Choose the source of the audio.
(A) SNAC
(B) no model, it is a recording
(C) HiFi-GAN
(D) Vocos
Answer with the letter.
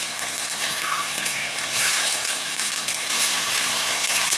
A